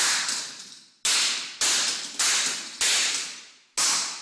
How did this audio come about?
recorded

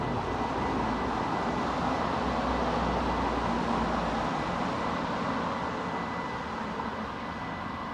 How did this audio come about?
recorded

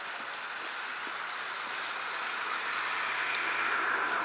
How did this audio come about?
recorded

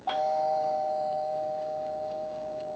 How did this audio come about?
remade